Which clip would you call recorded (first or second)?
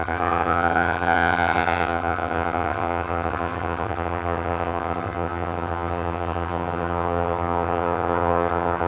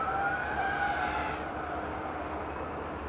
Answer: second